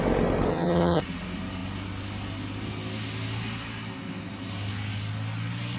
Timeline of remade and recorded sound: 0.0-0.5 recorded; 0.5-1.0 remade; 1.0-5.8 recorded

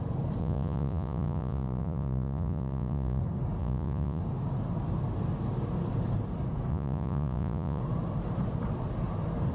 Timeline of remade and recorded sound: 0.0-0.4 recorded; 0.4-3.2 remade; 3.2-3.6 recorded; 3.6-4.2 remade; 4.2-6.7 recorded; 6.7-7.8 remade; 7.8-9.5 recorded

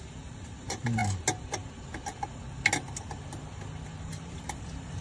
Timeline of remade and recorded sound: 0.0-1.0 remade; 1.0-4.0 recorded; 4.0-5.0 remade

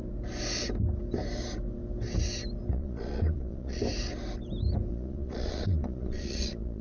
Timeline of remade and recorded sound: 0.0-2.7 recorded; 2.7-3.8 remade; 3.8-4.9 recorded; 4.9-6.8 remade

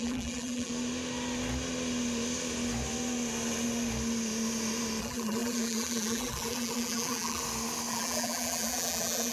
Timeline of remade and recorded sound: 0.0-0.7 remade; 0.7-5.0 recorded; 5.0-7.4 remade; 7.4-7.9 recorded; 7.9-9.3 remade

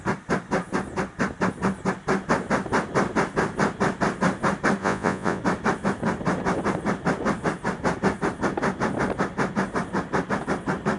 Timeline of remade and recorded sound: 0.0-4.8 recorded; 4.8-5.4 remade; 5.4-11.0 recorded

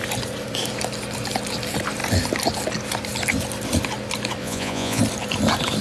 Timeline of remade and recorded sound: 0.0-4.4 recorded; 4.4-5.0 remade; 5.0-5.8 recorded

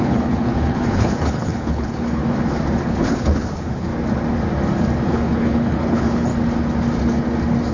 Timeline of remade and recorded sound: 0.0-2.2 remade; 2.2-2.8 recorded; 2.8-3.9 remade; 3.9-5.1 recorded; 5.1-6.3 remade; 6.3-7.7 recorded